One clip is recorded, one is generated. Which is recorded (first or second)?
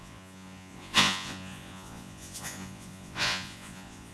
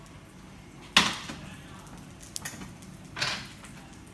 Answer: second